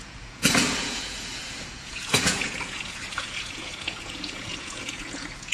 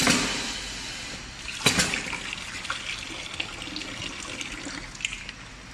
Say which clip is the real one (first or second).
second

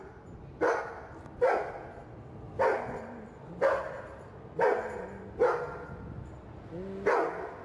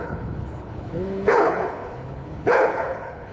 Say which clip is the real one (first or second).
first